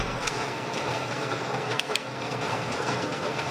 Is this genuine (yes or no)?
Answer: no